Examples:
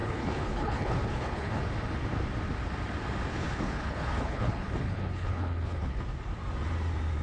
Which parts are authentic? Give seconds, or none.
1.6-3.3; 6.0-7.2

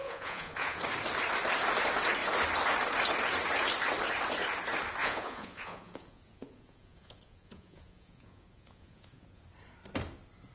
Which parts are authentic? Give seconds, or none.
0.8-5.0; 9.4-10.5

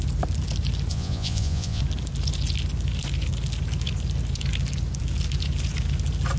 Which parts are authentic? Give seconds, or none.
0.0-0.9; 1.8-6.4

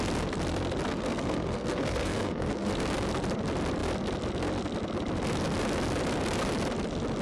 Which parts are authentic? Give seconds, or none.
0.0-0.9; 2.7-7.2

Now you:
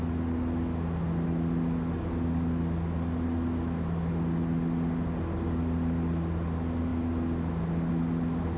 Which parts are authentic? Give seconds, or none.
0.0-8.6